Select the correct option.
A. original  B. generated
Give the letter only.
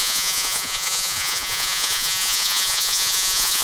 B